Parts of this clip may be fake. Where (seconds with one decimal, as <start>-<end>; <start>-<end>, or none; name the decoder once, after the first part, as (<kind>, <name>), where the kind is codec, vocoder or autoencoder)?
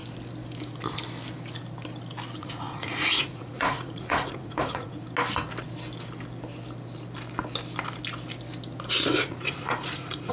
2.4-5.0 (vocoder, Vocos); 9.1-10.3